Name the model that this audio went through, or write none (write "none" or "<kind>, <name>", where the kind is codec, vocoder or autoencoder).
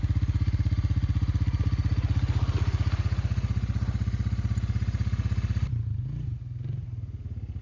none